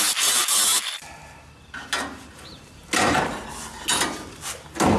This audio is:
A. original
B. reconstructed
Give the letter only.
A